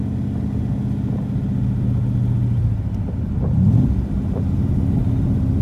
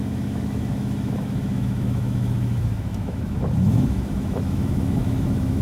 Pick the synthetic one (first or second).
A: second